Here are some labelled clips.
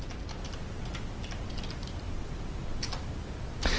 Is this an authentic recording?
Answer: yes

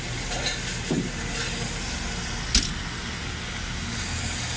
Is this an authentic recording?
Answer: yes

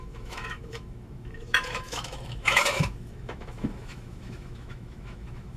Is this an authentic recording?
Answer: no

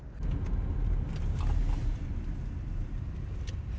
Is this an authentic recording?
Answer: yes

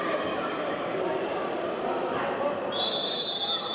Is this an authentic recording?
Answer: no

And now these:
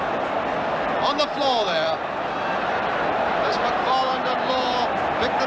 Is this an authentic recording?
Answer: no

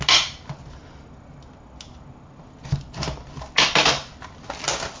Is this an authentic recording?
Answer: yes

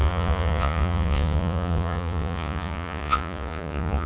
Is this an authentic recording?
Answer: no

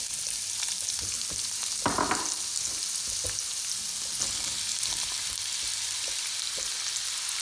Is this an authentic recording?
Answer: yes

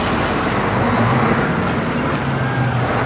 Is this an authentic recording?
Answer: yes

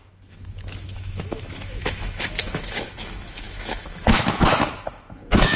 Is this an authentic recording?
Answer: no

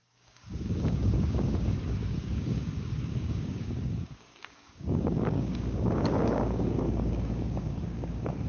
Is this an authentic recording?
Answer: no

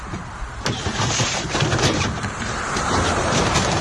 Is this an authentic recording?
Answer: no